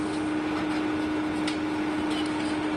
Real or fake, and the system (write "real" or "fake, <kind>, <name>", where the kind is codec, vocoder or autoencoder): real